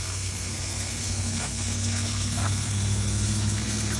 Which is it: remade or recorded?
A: remade